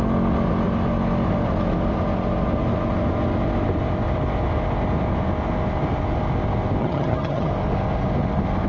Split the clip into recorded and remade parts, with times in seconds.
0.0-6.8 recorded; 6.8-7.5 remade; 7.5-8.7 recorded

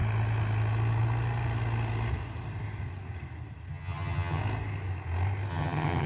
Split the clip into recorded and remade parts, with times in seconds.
0.0-3.7 recorded; 3.7-4.4 remade; 4.4-5.5 recorded; 5.5-6.1 remade

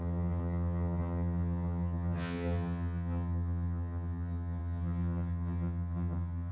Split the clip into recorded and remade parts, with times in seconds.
0.0-6.5 remade

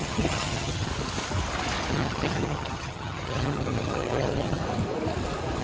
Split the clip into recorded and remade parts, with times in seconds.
0.0-0.9 remade; 0.9-1.9 recorded; 1.9-4.6 remade; 4.6-5.6 recorded

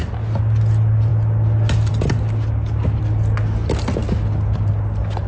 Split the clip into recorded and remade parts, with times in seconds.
0.0-5.3 recorded

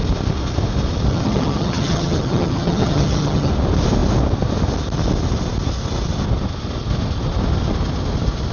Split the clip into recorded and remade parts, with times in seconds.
0.0-1.1 recorded; 1.1-3.5 remade; 3.5-8.5 recorded

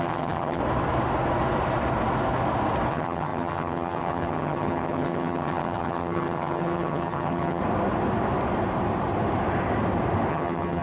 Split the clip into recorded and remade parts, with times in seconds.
0.0-0.6 remade; 0.6-2.9 recorded; 2.9-7.6 remade; 7.6-10.3 recorded; 10.3-10.8 remade

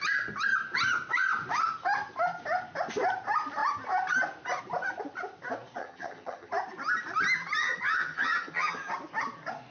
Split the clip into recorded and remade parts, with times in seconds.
0.0-5.8 recorded; 5.8-6.5 remade; 6.5-7.6 recorded; 7.6-8.9 remade; 8.9-9.7 recorded